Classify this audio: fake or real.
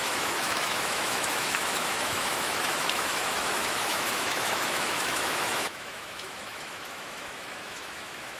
fake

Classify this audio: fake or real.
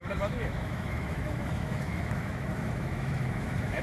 fake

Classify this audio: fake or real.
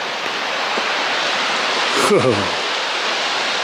real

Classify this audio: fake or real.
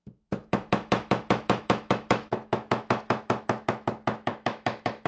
fake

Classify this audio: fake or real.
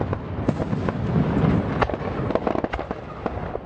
real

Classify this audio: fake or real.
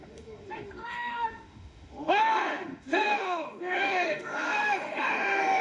fake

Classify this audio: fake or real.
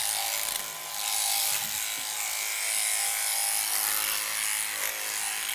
real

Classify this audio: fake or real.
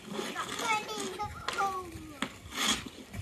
real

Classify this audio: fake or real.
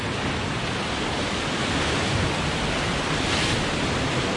real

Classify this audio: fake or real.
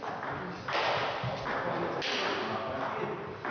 real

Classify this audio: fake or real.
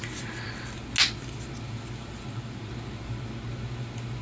real